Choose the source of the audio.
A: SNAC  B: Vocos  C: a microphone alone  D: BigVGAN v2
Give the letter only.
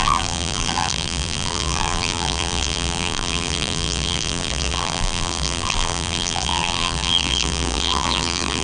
D